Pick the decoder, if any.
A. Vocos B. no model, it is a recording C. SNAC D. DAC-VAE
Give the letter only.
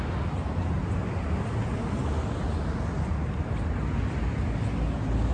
B